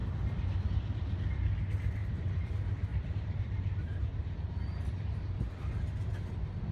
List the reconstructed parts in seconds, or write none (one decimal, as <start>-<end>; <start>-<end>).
2.0-2.5; 2.9-5.5